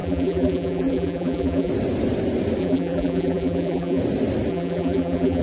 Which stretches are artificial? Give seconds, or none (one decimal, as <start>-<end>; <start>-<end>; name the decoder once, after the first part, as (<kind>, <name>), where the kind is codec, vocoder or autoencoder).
0.0-1.7 (vocoder, BigVGAN v2); 2.6-4.0; 4.5-5.4